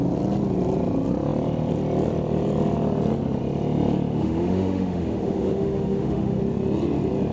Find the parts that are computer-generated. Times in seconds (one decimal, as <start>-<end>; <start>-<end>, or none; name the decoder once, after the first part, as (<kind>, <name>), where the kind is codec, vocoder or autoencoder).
4.1-6.4 (autoencoder, DAC-VAE)